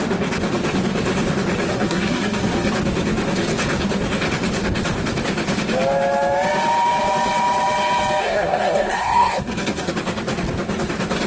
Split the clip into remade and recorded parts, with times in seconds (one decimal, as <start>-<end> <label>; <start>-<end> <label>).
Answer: 0.0-1.7 recorded; 1.7-2.7 remade; 2.7-8.2 recorded; 8.2-9.9 remade; 9.9-11.3 recorded